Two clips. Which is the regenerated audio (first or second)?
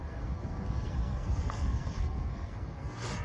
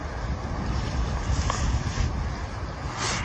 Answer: first